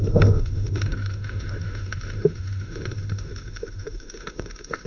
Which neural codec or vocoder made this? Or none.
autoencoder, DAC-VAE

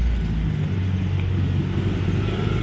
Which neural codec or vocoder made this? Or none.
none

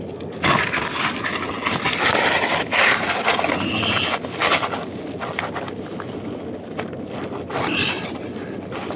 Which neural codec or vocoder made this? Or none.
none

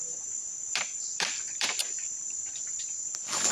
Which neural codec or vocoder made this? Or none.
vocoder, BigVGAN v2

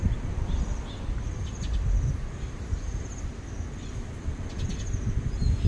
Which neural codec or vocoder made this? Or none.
none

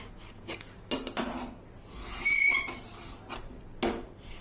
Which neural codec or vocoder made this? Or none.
none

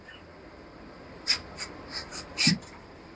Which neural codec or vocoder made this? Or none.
none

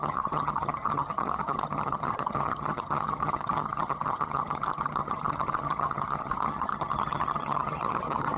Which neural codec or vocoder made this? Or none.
vocoder, HiFi-GAN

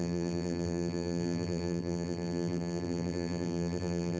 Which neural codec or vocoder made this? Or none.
vocoder, BigVGAN v2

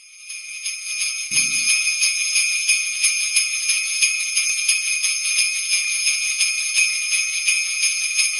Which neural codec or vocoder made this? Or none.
vocoder, Vocos